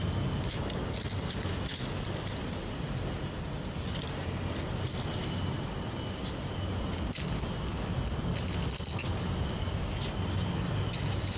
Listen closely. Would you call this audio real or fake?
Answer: real